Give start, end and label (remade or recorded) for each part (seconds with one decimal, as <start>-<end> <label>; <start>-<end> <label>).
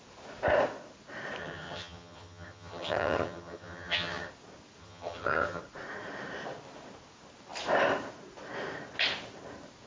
0.0-1.4 recorded; 1.4-4.3 remade; 4.3-4.8 recorded; 4.8-5.6 remade; 5.6-9.9 recorded